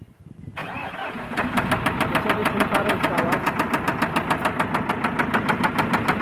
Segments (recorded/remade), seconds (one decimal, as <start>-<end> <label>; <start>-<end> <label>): 0.0-0.6 recorded; 0.6-1.7 remade; 1.7-2.4 recorded; 2.4-3.5 remade; 3.5-6.2 recorded